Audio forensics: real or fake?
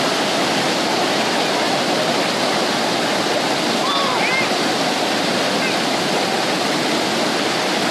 real